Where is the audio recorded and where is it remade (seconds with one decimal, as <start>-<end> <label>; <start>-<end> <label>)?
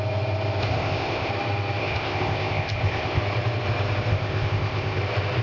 0.0-0.6 recorded; 0.6-1.3 remade; 1.3-1.8 recorded; 1.8-3.2 remade; 3.2-4.1 recorded; 4.1-5.0 remade; 5.0-5.4 recorded